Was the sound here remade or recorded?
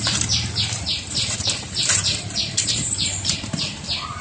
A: remade